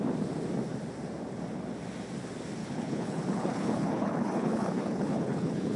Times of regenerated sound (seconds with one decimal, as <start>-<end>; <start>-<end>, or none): 2.6-5.8